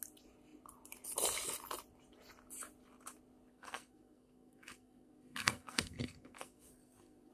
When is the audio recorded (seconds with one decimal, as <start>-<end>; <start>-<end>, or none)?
0.0-3.5